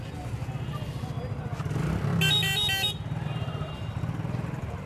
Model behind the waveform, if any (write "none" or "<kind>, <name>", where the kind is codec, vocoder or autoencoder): none